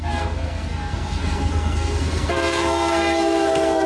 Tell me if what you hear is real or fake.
fake